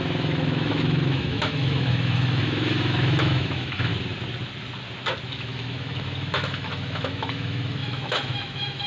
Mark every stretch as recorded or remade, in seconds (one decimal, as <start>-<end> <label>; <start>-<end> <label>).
0.0-3.9 remade; 3.9-5.3 recorded; 5.3-8.9 remade